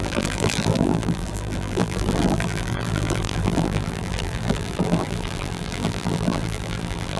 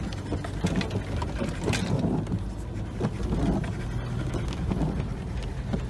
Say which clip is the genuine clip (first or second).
second